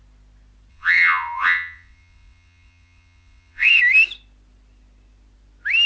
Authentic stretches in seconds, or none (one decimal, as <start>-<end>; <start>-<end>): 0.0-0.7; 3.8-5.9